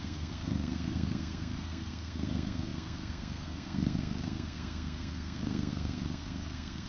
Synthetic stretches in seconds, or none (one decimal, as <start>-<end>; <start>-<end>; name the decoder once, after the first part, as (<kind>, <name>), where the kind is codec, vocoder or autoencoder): 0.0-6.9 (codec, SNAC)